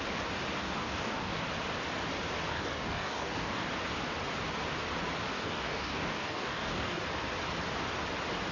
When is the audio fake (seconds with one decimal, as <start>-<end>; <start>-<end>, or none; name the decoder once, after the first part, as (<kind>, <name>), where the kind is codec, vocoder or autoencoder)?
0.6-1.5 (codec, DAC); 2.5-3.7; 5.3-7.0

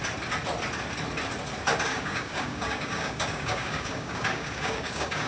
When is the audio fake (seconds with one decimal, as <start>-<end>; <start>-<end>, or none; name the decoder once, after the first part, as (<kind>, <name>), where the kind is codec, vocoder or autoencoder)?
1.9-5.3 (codec, DAC)

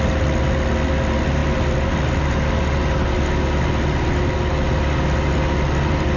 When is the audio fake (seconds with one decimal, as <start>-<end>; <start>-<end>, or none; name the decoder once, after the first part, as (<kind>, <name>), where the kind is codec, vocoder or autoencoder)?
none

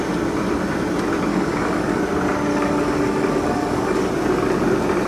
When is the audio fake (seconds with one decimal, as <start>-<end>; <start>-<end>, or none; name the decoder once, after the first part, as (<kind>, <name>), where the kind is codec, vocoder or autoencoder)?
1.3-2.0 (codec, DAC); 2.5-4.1

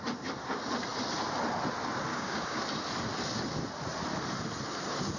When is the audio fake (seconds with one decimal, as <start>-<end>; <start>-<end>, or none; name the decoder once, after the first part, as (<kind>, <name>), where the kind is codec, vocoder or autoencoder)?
2.1-2.6 (codec, DAC)

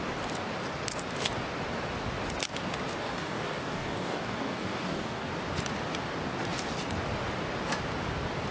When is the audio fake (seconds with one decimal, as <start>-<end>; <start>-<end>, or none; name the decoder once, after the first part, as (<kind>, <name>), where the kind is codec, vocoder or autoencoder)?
3.0-5.3 (codec, DAC)

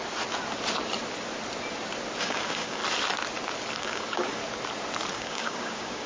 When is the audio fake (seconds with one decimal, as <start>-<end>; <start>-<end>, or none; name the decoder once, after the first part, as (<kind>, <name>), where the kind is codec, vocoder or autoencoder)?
2.2-2.8 (codec, DAC); 3.8-4.4; 5.1-6.1